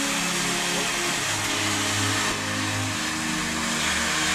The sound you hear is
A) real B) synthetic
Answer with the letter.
A